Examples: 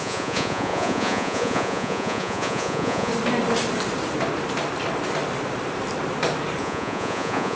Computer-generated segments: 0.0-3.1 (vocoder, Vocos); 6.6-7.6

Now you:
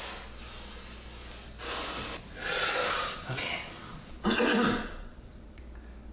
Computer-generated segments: 2.8-4.1 (vocoder, Vocos); 4.8-5.6

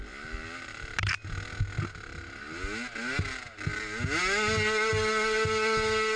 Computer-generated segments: none